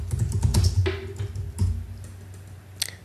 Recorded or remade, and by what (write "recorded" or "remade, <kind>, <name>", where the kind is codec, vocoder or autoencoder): recorded